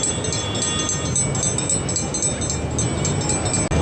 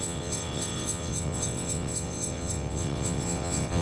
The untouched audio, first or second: first